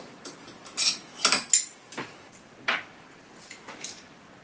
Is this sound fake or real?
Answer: real